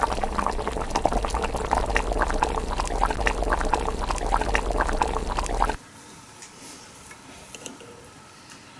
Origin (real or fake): real